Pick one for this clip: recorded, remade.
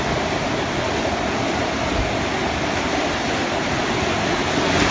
recorded